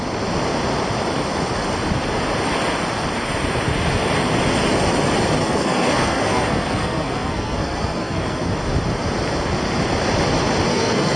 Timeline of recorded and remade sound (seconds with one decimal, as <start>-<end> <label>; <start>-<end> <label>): 0.0-5.4 recorded; 5.4-8.5 remade; 8.5-10.7 recorded; 10.7-11.2 remade